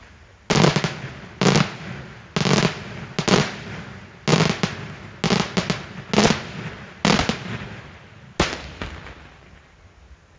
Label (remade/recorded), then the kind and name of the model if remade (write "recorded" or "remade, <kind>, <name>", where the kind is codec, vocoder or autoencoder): recorded